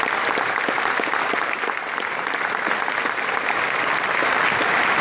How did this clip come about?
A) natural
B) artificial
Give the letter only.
A